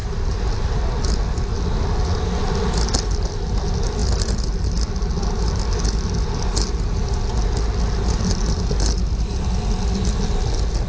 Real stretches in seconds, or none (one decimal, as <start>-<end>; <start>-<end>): 0.5-10.9

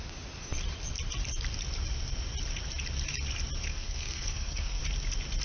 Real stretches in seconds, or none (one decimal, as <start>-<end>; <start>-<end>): 0.0-3.7; 4.8-5.4

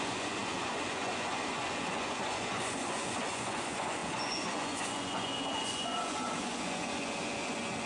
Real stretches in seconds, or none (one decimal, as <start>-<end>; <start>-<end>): none